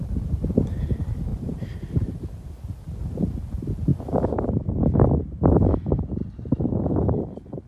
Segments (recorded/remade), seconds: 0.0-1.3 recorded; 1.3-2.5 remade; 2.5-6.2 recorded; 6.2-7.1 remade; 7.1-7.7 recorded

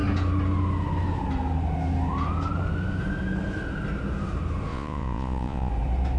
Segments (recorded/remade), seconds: 0.0-4.7 recorded; 4.7-5.7 remade; 5.7-6.2 recorded

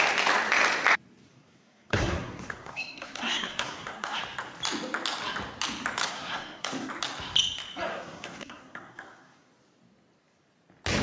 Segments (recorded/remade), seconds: 0.0-1.3 recorded; 1.3-4.2 remade; 4.2-6.0 recorded; 6.0-6.9 remade; 6.9-7.9 recorded; 7.9-9.5 remade; 9.5-11.0 recorded

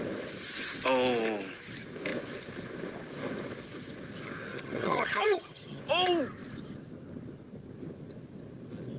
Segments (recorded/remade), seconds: 0.0-4.5 recorded; 4.5-5.8 remade; 5.8-9.0 recorded

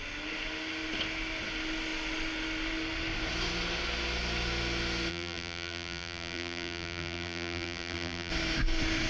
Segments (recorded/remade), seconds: 0.0-5.1 recorded; 5.1-8.3 remade; 8.3-9.1 recorded

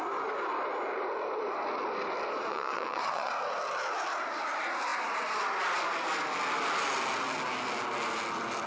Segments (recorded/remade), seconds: 0.0-2.5 recorded; 2.5-3.3 remade; 3.3-8.7 recorded

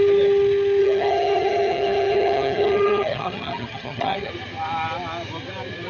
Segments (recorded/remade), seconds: 0.0-0.8 recorded; 0.8-4.3 remade; 4.3-5.9 recorded

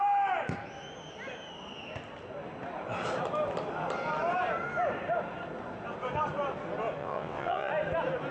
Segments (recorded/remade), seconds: 0.0-7.0 recorded; 7.0-7.7 remade; 7.7-8.3 recorded